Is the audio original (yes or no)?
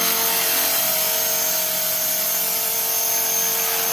yes